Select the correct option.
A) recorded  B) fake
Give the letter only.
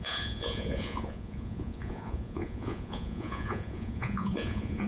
B